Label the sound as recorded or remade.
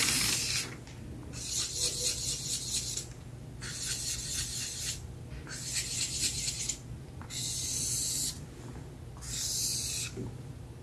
recorded